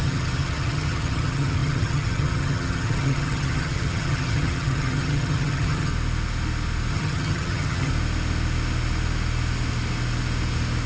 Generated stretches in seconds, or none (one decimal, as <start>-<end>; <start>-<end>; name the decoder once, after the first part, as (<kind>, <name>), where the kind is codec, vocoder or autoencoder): 0.0-5.9 (vocoder, HiFi-GAN); 6.9-7.9